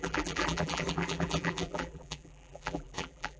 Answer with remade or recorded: remade